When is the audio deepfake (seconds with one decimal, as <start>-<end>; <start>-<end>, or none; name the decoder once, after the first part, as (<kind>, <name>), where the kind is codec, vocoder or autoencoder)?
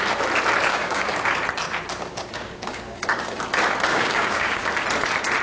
0.7-1.3 (codec, DAC); 2.1-3.0; 3.9-4.7